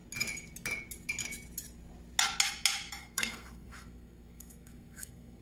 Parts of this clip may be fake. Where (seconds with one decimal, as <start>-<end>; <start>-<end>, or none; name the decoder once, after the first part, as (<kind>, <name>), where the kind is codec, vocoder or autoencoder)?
3.0-5.4 (codec, SNAC)